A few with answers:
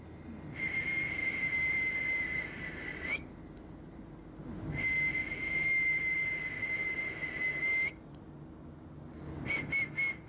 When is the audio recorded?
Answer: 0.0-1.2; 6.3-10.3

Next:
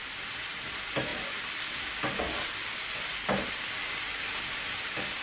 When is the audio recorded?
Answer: 0.6-5.2

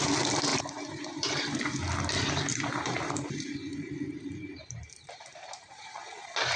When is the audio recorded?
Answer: 0.0-0.5; 1.5-2.5; 5.9-6.6

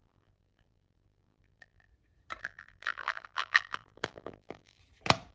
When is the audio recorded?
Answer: 1.9-2.4; 4.8-5.3

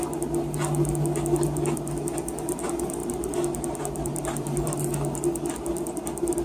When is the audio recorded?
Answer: 0.0-3.0; 4.8-6.4

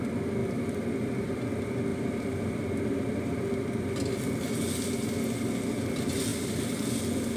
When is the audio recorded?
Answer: 0.0-0.4; 1.4-1.9; 2.6-6.3; 6.9-7.4